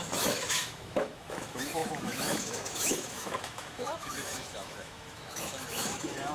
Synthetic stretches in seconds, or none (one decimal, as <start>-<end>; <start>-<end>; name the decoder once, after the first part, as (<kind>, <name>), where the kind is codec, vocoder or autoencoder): 0.0-6.3 (autoencoder, DAC-VAE)